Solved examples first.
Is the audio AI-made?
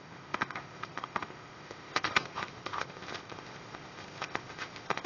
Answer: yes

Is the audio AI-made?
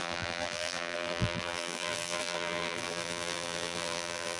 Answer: yes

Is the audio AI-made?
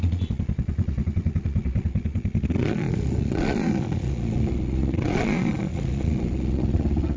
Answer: yes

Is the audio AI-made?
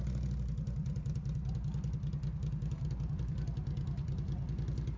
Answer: no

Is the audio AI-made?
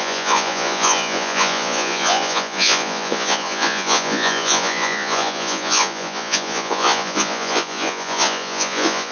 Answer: yes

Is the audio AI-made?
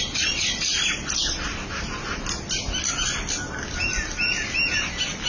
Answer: no